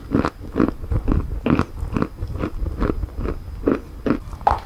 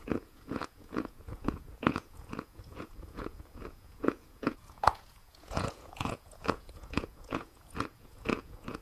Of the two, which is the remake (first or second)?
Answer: second